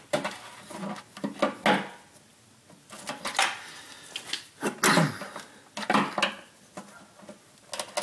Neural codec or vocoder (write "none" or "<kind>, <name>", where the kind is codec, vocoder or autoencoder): none